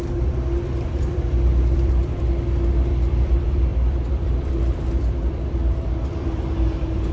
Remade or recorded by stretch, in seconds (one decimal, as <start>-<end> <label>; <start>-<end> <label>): 0.0-7.1 remade